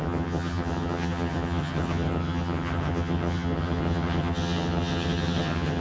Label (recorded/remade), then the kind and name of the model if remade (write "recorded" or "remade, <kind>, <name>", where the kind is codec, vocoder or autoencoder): remade, vocoder, HiFi-GAN